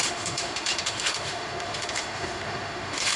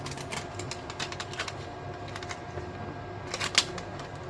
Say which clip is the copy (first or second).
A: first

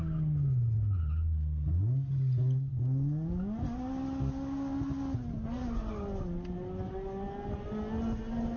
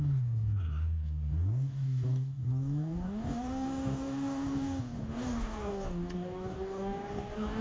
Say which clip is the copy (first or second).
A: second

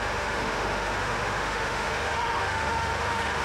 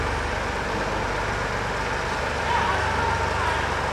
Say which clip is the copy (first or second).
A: first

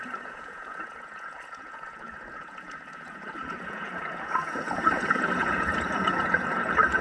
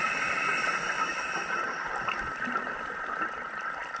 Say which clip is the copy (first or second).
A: first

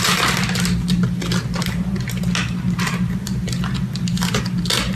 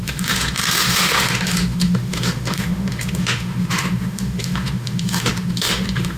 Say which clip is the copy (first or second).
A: second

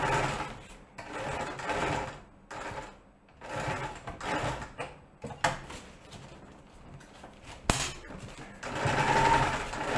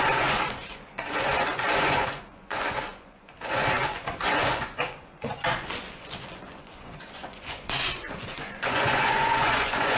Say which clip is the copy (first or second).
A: second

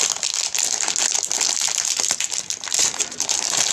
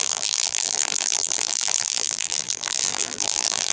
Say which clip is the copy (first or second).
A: second